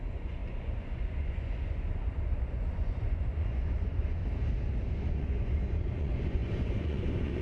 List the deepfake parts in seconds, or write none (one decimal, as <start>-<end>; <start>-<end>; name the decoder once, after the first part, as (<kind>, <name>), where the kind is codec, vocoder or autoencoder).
0.0-4.2 (vocoder, Vocos); 4.9-7.4